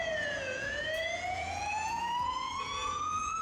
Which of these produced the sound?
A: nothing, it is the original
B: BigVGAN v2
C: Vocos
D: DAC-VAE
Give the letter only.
C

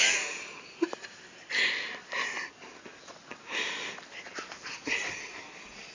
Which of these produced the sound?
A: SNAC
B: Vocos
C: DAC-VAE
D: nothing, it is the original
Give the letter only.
D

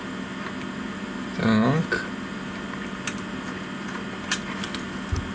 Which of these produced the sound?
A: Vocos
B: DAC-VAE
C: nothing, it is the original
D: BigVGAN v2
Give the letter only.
C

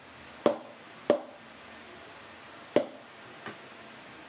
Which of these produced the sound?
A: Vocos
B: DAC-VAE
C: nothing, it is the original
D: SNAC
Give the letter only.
C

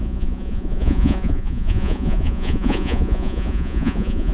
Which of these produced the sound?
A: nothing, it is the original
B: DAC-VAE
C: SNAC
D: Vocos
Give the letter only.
D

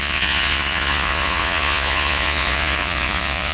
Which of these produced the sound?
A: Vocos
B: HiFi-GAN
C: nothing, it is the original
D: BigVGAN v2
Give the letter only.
A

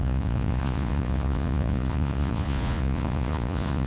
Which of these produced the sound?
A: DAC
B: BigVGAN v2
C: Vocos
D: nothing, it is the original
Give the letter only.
C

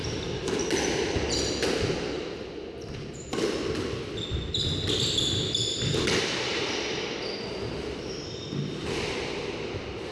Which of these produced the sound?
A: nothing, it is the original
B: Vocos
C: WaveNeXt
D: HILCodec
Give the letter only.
A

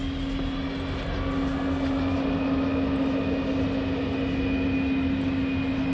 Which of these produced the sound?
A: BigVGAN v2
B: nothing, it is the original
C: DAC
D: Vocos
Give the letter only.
B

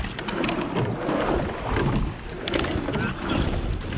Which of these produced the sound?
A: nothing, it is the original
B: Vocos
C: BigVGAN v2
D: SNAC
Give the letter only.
A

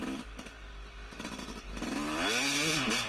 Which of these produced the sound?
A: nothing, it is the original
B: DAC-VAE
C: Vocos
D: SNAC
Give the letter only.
A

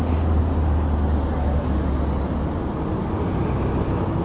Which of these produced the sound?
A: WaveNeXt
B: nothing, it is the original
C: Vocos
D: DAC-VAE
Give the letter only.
B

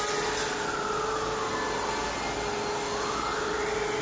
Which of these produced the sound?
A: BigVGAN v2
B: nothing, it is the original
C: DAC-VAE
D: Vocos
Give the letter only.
B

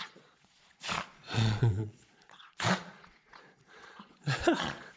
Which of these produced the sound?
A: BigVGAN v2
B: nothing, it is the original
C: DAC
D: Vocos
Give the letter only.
D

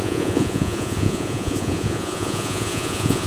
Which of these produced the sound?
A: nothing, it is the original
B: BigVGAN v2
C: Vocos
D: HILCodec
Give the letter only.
C